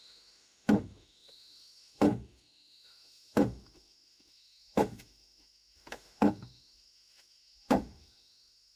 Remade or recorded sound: remade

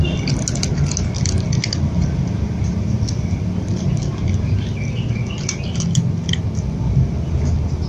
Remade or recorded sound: recorded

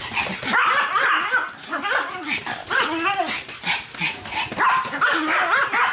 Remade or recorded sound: recorded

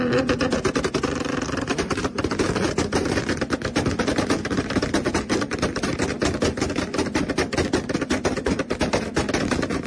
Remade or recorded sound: recorded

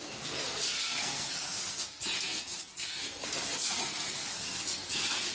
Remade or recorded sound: remade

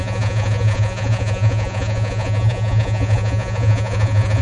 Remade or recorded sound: remade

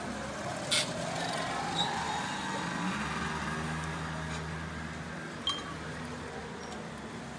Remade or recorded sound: recorded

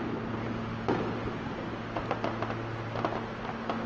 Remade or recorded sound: recorded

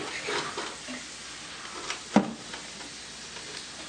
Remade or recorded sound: recorded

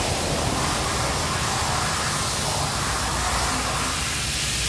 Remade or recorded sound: recorded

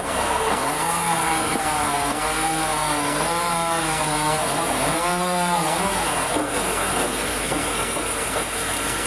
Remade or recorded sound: remade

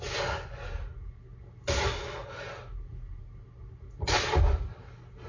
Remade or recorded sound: recorded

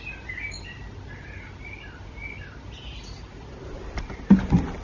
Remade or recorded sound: recorded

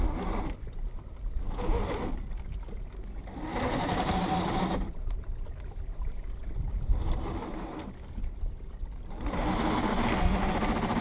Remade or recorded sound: recorded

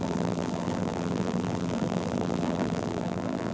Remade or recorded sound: remade